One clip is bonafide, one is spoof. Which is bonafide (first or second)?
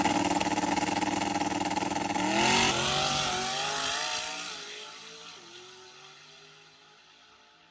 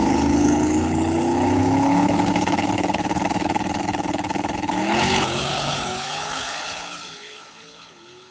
first